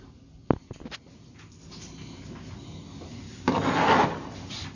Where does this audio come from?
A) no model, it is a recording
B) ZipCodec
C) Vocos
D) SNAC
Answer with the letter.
A